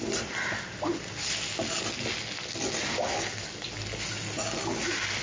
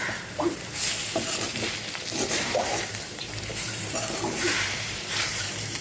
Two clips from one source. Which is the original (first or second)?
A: first